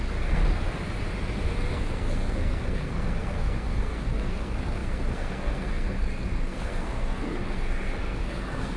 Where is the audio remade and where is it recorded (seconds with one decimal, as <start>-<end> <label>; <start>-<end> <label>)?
0.0-0.4 remade; 0.4-1.7 recorded; 1.7-8.8 remade